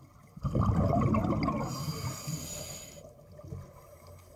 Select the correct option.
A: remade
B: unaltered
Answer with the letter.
B